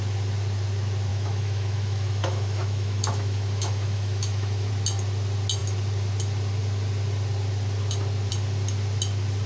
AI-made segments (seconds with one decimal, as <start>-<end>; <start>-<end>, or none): 1.1-4.7

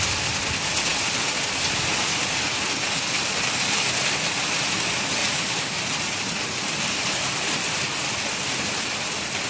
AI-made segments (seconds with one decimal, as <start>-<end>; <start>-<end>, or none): none